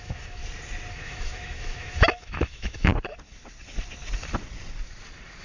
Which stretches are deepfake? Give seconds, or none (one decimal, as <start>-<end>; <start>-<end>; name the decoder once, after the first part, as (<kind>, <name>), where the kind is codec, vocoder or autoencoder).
0.0-0.4 (autoencoder, DAC-VAE); 0.9-2.9